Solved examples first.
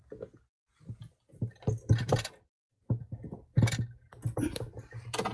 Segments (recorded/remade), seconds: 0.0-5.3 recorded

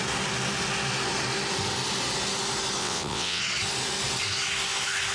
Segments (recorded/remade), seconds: 0.0-2.8 recorded; 2.8-3.4 remade; 3.4-5.1 recorded

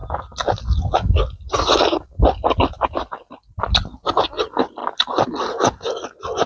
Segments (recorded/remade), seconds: 0.0-6.5 recorded

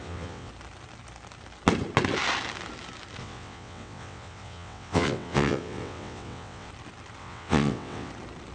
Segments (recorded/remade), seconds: 0.0-0.5 remade; 0.5-3.2 recorded; 3.2-6.7 remade; 6.7-7.2 recorded; 7.2-8.1 remade; 8.1-8.5 recorded

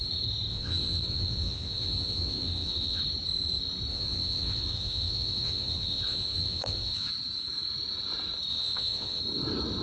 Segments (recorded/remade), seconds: 0.0-0.5 recorded; 0.5-3.0 remade; 3.0-3.9 recorded; 3.9-7.1 remade; 7.1-8.5 recorded; 8.5-9.2 remade; 9.2-9.8 recorded

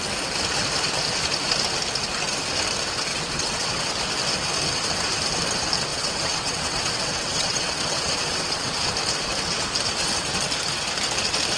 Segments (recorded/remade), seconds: 0.0-3.1 recorded; 3.1-3.9 remade; 3.9-5.9 recorded; 5.9-8.9 remade; 8.9-11.6 recorded